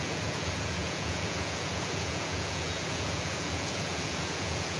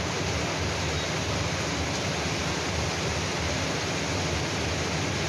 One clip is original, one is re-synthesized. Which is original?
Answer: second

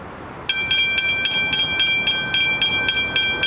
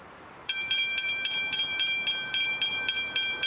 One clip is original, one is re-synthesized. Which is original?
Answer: first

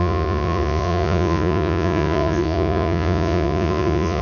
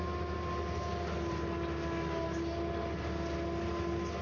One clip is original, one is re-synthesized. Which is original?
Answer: second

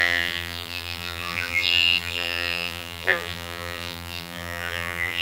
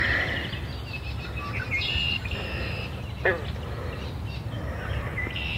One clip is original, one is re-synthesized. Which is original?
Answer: second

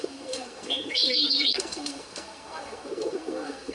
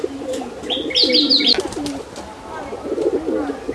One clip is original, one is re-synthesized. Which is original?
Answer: second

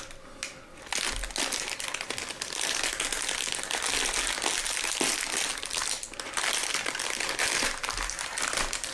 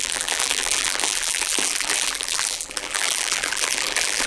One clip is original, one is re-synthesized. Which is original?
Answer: first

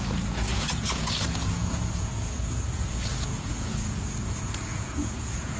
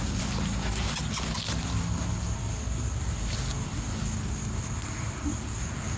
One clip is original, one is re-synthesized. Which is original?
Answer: second